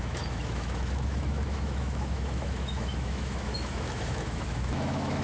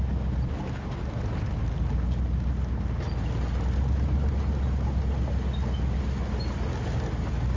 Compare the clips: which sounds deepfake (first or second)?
first